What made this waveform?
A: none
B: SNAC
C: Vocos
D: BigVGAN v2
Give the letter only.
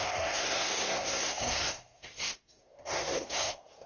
B